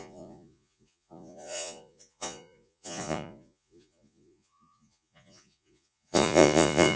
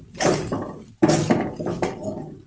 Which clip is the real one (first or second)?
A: second